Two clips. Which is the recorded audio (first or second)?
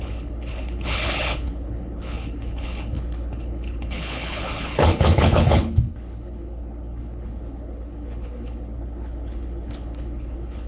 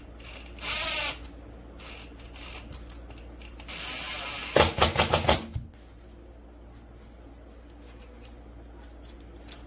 second